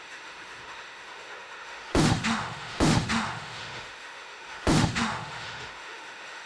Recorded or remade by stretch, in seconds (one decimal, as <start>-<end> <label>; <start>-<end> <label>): 0.0-6.5 remade